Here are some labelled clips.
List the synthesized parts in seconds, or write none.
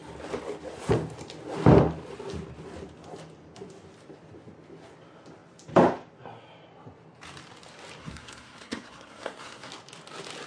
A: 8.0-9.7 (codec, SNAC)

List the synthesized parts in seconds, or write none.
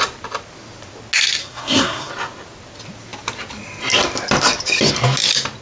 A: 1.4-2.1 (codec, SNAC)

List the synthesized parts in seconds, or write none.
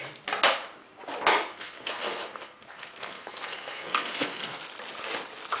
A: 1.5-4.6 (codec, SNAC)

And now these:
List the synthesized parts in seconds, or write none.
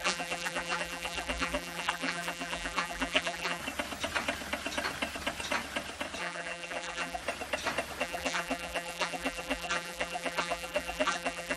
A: 0.0-3.6 (vocoder, BigVGAN v2); 6.2-7.2; 8.0-11.6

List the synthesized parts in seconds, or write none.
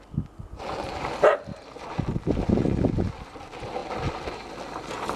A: none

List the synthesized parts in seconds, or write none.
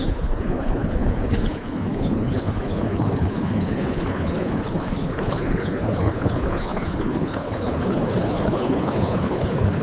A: 0.0-9.8 (codec, HILCodec)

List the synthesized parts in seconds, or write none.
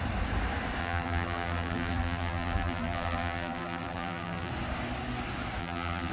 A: 0.8-4.5 (vocoder, BigVGAN v2); 5.6-6.1